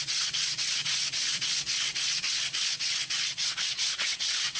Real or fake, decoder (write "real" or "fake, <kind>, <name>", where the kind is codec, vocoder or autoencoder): fake, vocoder, WaveNeXt